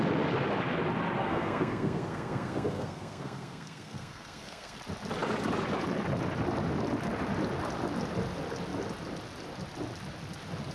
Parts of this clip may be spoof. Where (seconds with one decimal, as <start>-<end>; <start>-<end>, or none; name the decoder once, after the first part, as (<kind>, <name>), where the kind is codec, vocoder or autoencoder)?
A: 1.2-4.8 (codec, SNAC)